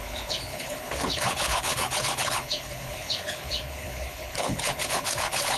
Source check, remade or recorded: remade